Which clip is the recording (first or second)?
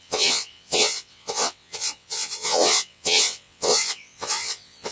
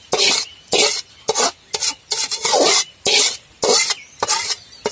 second